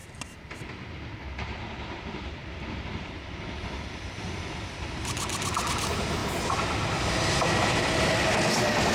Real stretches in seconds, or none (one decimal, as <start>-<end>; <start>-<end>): 0.0-2.4; 5.7-8.9